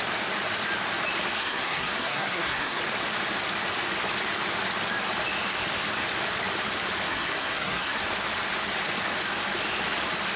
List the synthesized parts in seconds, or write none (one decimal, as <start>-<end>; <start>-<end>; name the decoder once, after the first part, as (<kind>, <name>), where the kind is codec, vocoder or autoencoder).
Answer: 1.4-2.8 (codec, SNAC); 7.1-8.0